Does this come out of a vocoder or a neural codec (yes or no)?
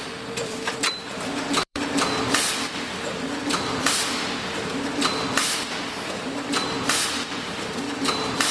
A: yes